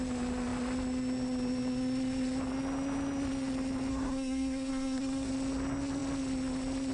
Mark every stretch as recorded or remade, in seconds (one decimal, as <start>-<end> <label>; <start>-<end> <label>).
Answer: 0.0-3.9 recorded; 3.9-5.3 remade; 5.3-6.9 recorded

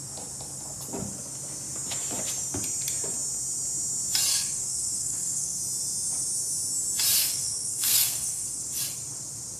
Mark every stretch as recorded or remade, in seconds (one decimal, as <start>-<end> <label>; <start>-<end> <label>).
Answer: 0.0-4.3 recorded; 4.3-5.6 remade; 5.6-7.2 recorded; 7.2-8.6 remade; 8.6-9.6 recorded

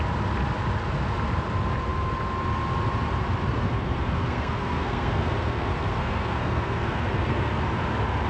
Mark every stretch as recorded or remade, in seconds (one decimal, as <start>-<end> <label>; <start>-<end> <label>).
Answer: 0.0-3.5 recorded; 3.5-7.6 remade; 7.6-8.3 recorded

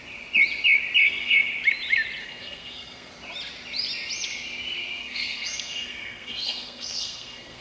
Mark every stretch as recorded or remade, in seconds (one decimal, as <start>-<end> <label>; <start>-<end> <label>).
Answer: 0.0-1.0 recorded; 1.0-1.5 remade; 1.5-2.2 recorded; 2.2-3.1 remade; 3.1-5.0 recorded; 5.0-7.6 remade

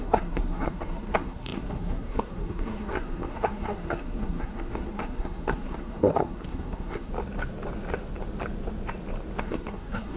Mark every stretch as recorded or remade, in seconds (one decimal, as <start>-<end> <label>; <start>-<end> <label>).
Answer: 0.0-7.1 remade; 7.1-9.4 recorded; 9.4-10.2 remade

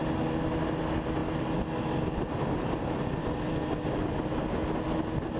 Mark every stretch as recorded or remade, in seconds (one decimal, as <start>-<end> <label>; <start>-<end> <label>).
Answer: 0.0-5.4 recorded

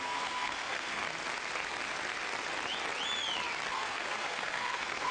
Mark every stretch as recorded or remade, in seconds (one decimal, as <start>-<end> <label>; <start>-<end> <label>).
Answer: 0.0-1.0 remade; 1.0-3.7 recorded; 3.7-5.1 remade